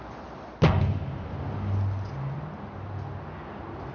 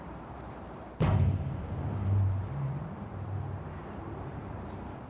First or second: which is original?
first